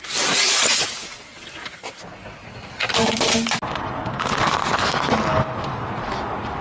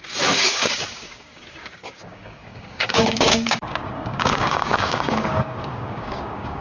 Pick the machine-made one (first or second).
second